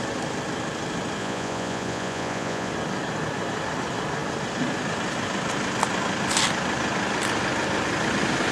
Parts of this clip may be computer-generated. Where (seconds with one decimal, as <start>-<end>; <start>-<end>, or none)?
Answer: 1.2-2.7

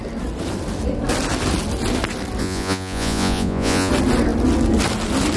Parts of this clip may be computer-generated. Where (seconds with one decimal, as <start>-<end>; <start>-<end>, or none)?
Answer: 2.4-3.9

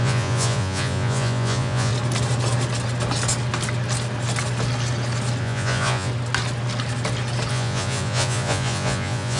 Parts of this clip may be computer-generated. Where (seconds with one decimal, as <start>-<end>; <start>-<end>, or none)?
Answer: 0.0-1.9; 5.4-6.1; 7.5-9.4

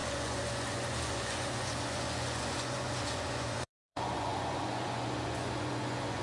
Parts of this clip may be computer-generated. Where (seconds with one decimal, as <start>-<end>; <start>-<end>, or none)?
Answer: 0.0-6.2